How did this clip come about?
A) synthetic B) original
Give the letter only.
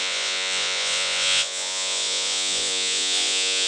A